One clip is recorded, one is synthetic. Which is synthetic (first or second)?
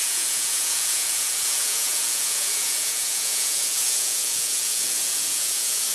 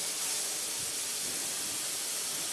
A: first